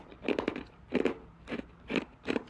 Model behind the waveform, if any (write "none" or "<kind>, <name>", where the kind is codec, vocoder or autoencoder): none